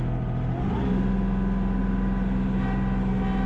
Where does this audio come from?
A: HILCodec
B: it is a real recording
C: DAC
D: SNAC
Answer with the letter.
B